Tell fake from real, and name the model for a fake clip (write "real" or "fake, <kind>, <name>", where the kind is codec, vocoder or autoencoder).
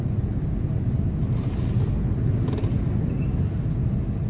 real